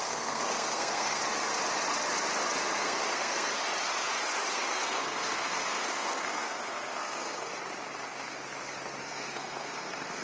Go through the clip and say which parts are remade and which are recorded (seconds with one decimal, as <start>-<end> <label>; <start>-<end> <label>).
0.0-1.2 remade; 1.2-2.8 recorded; 2.8-3.5 remade; 3.5-4.5 recorded; 4.5-7.5 remade; 7.5-9.0 recorded; 9.0-10.2 remade